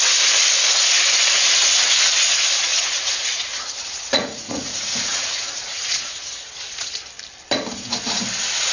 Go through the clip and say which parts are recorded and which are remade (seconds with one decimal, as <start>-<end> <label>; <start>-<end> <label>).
0.0-2.7 recorded; 2.7-7.0 remade; 7.0-8.7 recorded